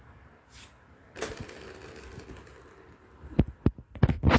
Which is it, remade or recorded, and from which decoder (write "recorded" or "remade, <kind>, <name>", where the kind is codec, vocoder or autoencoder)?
recorded